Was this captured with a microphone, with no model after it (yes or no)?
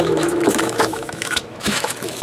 no